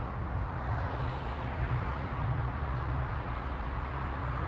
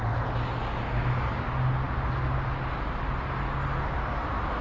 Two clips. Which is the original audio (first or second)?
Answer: second